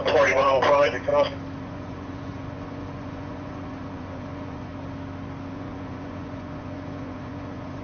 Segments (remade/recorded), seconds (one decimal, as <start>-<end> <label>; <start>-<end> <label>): 0.0-1.1 remade; 1.1-1.6 recorded; 1.6-4.7 remade; 4.7-5.5 recorded; 5.5-7.8 remade